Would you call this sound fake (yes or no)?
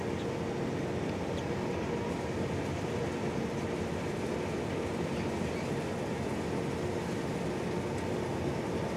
no